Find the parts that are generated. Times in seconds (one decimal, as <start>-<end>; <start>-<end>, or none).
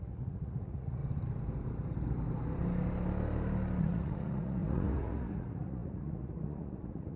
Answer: 0.0-1.0; 3.8-7.2